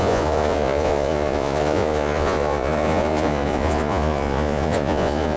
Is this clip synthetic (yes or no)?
yes